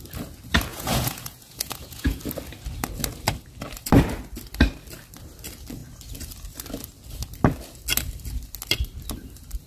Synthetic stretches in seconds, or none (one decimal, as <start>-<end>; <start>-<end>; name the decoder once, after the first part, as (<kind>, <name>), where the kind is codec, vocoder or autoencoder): 0.7-2.2 (vocoder, Vocos)